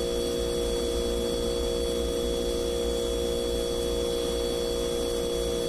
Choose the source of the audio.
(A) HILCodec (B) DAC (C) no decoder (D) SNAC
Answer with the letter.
C